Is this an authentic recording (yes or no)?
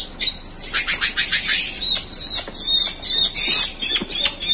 yes